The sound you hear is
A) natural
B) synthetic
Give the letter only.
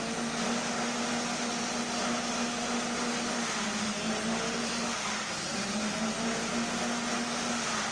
A